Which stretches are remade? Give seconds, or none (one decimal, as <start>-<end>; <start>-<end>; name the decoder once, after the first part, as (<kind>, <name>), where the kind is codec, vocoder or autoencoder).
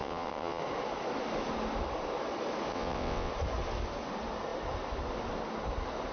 0.0-0.6 (vocoder, WaveNeXt); 2.7-3.3